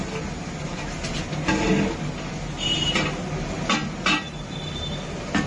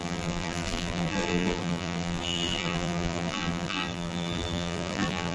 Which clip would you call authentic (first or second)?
first